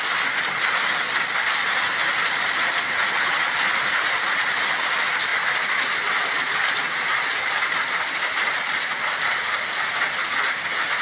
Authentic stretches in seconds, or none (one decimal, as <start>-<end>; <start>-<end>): 0.0-11.0